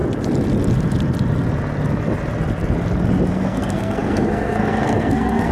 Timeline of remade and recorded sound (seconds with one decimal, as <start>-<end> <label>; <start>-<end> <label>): 0.0-3.3 recorded; 3.3-5.5 remade